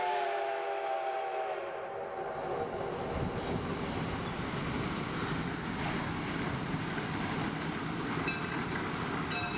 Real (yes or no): yes